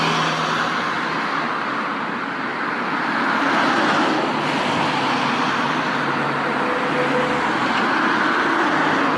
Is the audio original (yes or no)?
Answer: yes